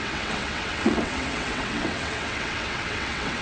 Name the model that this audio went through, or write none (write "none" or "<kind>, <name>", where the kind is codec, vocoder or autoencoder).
vocoder, WaveNeXt